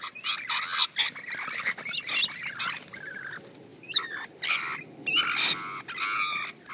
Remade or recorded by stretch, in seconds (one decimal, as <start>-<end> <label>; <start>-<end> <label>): 0.0-6.7 recorded